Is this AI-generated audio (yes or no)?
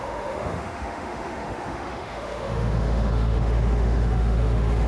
yes